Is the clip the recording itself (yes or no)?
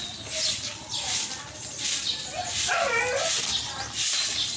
yes